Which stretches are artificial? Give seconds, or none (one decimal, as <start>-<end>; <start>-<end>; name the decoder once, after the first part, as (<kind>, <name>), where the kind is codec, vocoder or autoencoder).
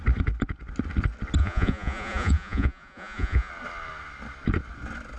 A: 1.4-3.5 (vocoder, Vocos)